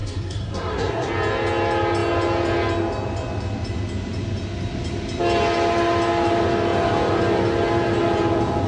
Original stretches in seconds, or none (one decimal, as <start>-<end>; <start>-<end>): 1.1-8.7